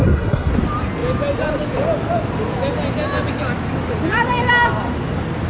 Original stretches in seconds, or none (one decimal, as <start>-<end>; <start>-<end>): 0.5-5.5